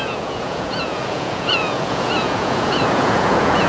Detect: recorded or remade remade